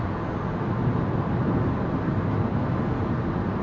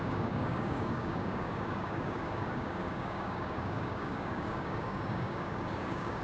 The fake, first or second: second